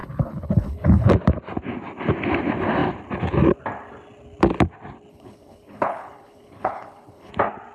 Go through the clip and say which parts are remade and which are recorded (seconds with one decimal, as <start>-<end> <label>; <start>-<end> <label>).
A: 0.0-1.1 remade; 1.1-5.1 recorded; 5.1-7.3 remade; 7.3-7.7 recorded